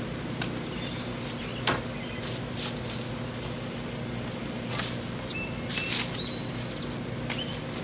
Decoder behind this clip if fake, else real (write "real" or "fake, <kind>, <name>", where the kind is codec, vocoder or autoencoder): real